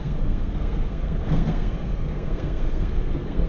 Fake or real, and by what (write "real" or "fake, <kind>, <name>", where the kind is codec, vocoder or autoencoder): fake, codec, SNAC